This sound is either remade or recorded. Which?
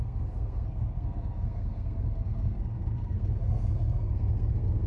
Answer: remade